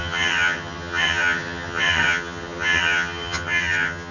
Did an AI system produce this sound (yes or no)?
yes